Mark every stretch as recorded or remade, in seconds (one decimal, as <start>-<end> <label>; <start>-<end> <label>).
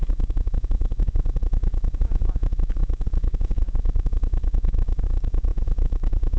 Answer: 0.0-6.4 remade